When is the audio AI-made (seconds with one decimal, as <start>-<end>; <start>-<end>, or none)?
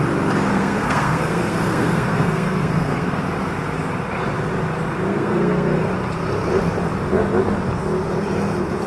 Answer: 0.5-3.2; 5.1-5.9